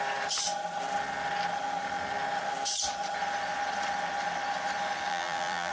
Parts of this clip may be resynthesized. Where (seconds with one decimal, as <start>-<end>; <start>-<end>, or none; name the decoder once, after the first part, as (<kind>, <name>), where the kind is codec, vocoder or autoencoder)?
5.1-5.7 (vocoder, BigVGAN v2)